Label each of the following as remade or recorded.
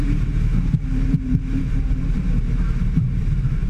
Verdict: remade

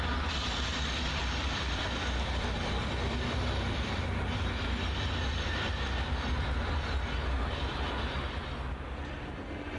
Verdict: remade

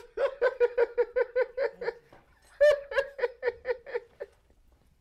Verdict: remade